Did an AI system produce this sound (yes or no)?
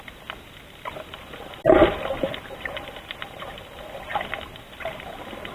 no